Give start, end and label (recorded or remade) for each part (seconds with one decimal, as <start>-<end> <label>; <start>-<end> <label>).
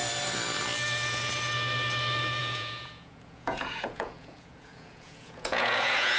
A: 0.0-2.4 recorded; 2.4-6.2 remade